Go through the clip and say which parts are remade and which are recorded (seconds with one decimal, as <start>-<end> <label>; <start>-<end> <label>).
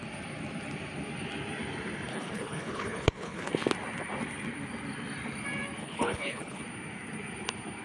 0.0-2.1 recorded; 2.1-3.5 remade; 3.5-5.8 recorded; 5.8-6.6 remade; 6.6-7.8 recorded